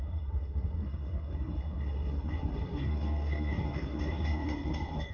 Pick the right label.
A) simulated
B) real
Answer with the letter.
A